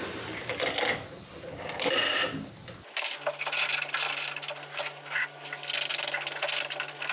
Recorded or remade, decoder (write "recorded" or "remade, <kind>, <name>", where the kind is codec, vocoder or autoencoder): recorded